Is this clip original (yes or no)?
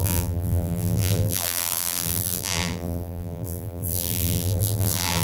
no